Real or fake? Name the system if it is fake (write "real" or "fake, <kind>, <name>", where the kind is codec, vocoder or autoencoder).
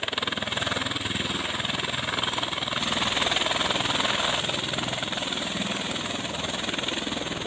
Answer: real